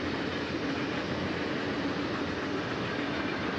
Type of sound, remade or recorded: recorded